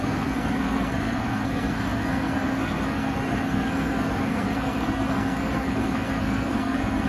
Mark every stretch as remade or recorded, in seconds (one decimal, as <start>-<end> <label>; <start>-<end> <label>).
0.0-7.1 remade